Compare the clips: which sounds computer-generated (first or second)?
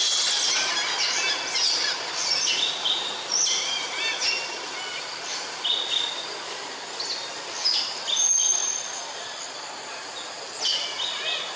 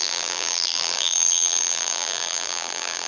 second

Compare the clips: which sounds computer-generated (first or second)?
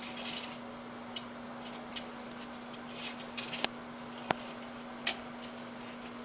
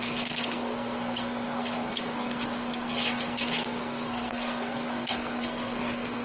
second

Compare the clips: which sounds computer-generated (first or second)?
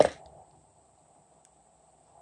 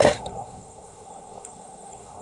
second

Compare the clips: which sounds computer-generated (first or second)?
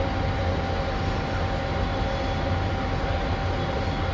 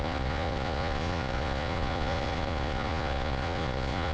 second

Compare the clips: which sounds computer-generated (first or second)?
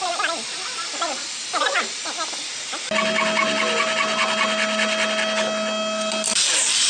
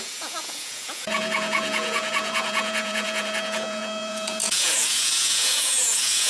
second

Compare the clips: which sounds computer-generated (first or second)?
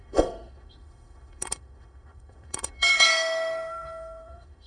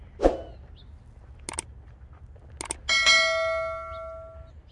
first